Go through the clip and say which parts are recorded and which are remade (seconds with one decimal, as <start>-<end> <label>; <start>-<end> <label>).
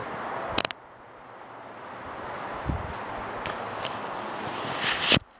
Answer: 0.0-5.4 recorded